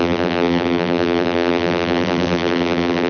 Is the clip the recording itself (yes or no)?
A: no